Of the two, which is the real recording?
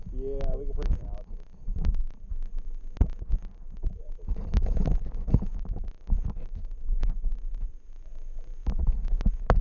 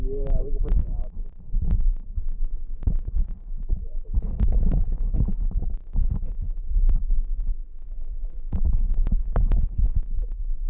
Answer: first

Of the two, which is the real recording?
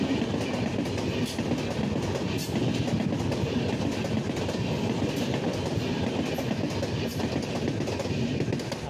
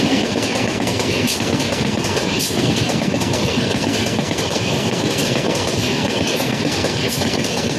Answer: first